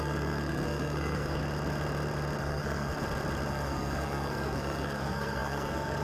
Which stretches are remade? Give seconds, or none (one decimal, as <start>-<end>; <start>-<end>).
0.0-1.4; 2.4-2.9; 3.5-6.0